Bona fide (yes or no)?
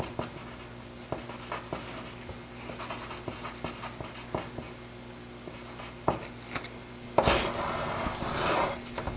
yes